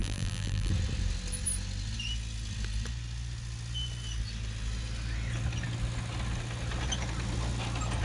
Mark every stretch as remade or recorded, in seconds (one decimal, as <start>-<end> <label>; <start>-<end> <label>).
0.0-0.7 remade; 0.7-8.0 recorded